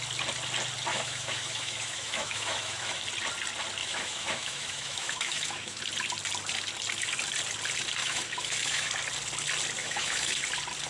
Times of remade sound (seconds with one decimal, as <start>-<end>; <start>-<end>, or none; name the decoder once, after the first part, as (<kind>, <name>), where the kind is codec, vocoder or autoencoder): 0.9-3.0 (autoencoder, DAC-VAE); 3.8-5.8; 8.0-8.9; 9.8-10.4